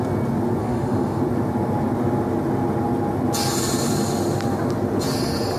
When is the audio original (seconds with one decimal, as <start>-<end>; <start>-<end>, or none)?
0.0-0.6; 1.2-5.6